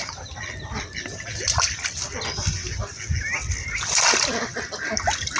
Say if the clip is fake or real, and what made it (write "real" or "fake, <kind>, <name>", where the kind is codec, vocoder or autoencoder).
real